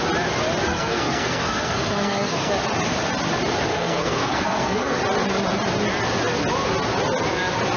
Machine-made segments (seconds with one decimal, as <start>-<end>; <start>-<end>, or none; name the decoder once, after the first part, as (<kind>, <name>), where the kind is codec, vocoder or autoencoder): 0.7-2.5 (codec, SNAC); 3.7-5.0